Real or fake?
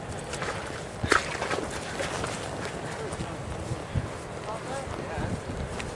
real